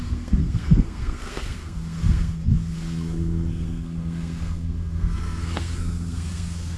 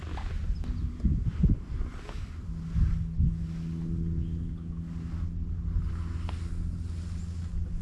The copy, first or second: first